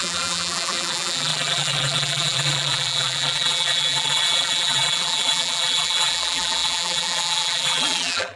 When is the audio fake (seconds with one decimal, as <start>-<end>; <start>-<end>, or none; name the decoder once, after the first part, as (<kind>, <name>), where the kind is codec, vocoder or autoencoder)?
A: 0.0-8.4 (vocoder, BigVGAN v2)

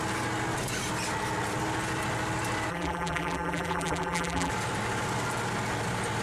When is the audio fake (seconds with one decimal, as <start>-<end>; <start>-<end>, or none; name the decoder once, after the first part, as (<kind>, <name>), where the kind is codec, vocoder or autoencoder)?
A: 2.7-4.5 (vocoder, BigVGAN v2)

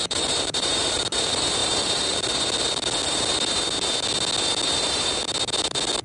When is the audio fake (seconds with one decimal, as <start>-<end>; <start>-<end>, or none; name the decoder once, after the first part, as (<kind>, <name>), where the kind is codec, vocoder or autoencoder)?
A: 0.0-1.0 (vocoder, BigVGAN v2)

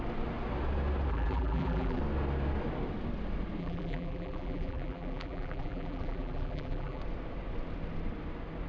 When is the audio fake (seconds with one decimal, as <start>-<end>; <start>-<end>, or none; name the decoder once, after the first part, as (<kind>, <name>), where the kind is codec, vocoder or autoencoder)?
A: 1.1-2.0 (vocoder, BigVGAN v2); 3.6-7.0